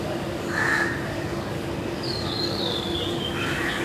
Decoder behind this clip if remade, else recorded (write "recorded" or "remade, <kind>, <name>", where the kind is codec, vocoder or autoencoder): remade, codec, DAC